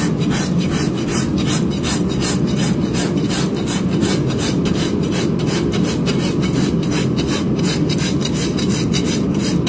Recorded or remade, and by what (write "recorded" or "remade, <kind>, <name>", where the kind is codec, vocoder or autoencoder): recorded